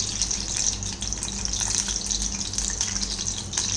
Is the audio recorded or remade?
recorded